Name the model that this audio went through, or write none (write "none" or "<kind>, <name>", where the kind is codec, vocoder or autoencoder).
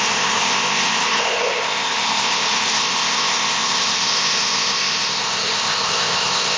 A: codec, ZipCodec